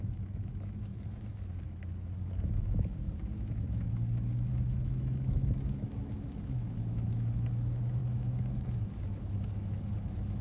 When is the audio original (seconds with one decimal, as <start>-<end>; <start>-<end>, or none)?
none